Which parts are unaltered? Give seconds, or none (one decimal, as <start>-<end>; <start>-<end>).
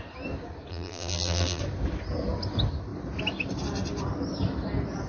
0.0-0.7; 1.6-5.1